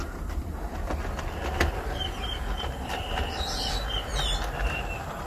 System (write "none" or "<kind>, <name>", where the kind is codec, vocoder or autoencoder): vocoder, BigVGAN v2